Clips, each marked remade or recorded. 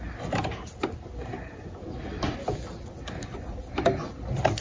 recorded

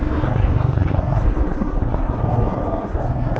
remade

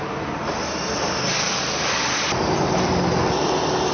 recorded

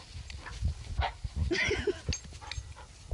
recorded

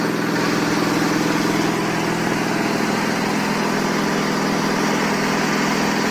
recorded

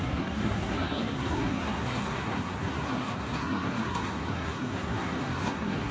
remade